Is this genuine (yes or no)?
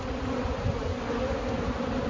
yes